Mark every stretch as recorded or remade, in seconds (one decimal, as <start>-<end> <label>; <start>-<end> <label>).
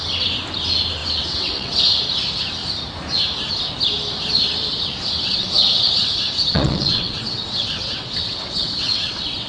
0.0-1.0 recorded; 1.0-1.8 remade; 1.8-4.8 recorded; 4.8-9.5 remade